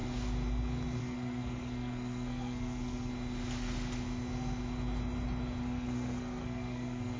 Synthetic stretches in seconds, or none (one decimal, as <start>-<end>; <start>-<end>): 1.0-3.1; 5.6-7.2